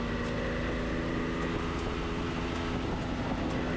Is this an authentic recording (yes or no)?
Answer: yes